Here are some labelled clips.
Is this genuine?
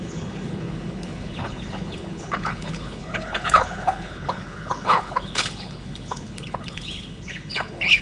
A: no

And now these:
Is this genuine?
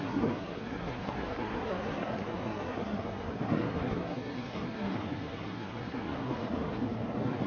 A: no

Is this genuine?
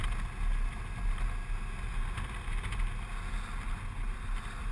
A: yes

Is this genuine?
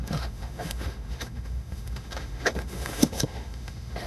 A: no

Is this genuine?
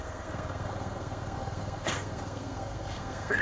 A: no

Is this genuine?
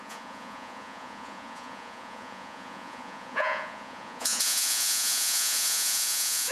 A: no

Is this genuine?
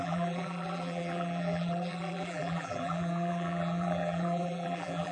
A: no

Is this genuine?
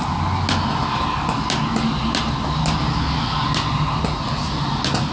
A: yes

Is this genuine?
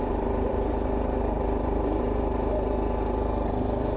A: no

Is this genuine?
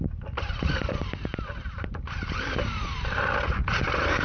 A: no